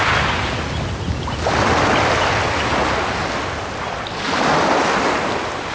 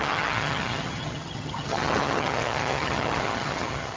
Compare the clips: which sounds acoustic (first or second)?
first